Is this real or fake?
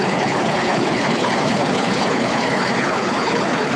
fake